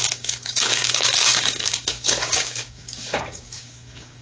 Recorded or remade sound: remade